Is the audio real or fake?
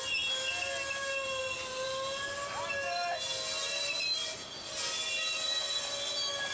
real